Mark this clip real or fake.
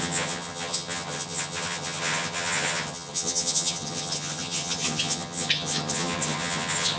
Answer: fake